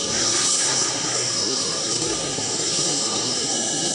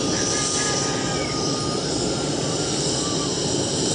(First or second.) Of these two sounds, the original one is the second